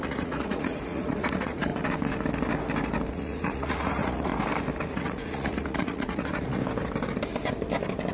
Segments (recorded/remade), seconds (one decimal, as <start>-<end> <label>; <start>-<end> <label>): 0.0-1.7 remade; 1.7-3.1 recorded; 3.1-4.3 remade; 4.3-4.9 recorded; 4.9-6.6 remade; 6.6-8.1 recorded